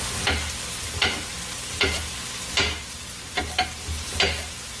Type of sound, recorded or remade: recorded